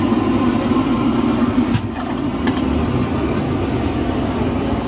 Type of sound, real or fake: real